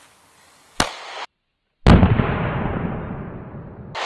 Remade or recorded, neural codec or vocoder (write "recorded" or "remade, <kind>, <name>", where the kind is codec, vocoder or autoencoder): recorded